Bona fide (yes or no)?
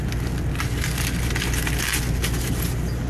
yes